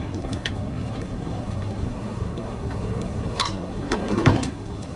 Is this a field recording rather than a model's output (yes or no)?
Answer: no